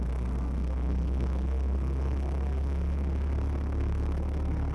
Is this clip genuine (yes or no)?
no